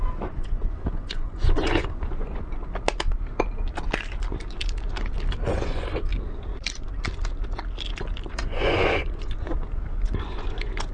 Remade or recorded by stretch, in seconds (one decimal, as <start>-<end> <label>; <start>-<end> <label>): 0.0-2.6 remade; 2.6-5.5 recorded; 5.5-6.1 remade; 6.1-8.3 recorded; 8.3-10.9 remade